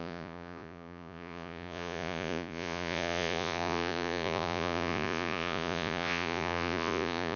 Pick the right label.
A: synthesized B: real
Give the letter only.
A